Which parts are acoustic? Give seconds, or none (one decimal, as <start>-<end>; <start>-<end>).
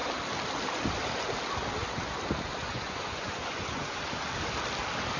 0.0-2.6; 4.0-5.2